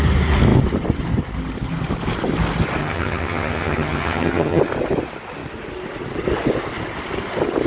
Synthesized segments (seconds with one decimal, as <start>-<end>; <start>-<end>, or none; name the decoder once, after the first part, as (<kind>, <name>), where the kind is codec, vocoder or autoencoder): 2.8-4.6 (vocoder, HiFi-GAN)